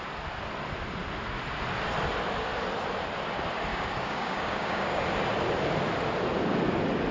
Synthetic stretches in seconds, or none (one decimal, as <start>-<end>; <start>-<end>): 3.7-5.0